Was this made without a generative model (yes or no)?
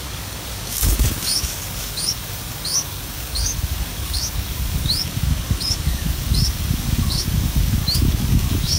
no